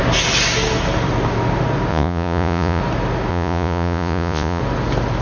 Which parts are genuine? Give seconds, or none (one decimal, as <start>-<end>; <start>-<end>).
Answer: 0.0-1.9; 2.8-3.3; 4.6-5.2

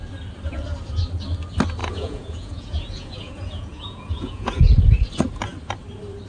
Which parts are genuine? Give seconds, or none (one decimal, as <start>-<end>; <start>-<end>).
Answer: 0.0-1.8; 4.8-6.3

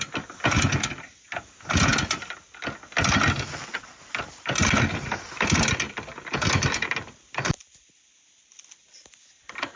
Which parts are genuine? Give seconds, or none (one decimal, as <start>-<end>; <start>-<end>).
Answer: 0.0-9.8

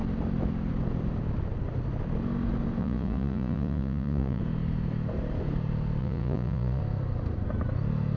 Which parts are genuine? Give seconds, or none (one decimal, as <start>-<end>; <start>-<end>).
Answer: 0.0-2.8; 4.4-6.0; 6.8-8.2

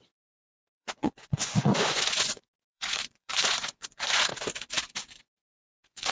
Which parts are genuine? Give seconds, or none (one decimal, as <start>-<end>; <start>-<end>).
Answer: 4.3-5.2

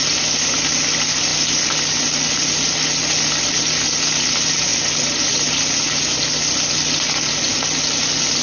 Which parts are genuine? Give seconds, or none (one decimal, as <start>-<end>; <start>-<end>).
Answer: 0.0-8.4